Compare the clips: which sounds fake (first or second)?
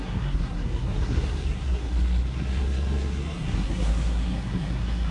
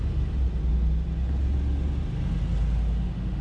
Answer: first